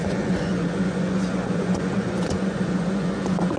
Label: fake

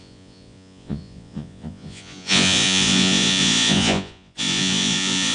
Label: fake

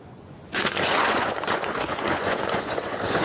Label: fake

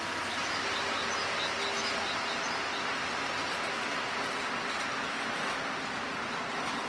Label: real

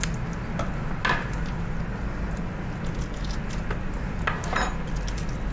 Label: real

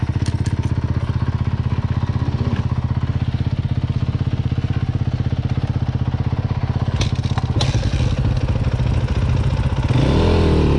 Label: real